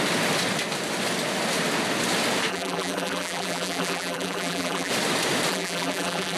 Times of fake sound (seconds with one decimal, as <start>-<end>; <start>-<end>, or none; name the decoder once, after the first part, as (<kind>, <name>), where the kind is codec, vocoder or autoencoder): 2.5-4.9 (vocoder, BigVGAN v2); 5.5-6.4